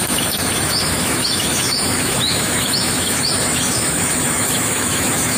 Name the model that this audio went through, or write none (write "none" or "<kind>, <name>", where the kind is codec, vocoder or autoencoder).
autoencoder, DAC-VAE